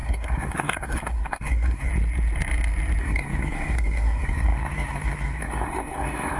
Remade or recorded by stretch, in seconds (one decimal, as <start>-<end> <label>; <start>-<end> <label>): 0.0-1.9 remade; 1.9-3.0 recorded; 3.0-6.4 remade